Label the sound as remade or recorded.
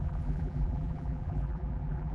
remade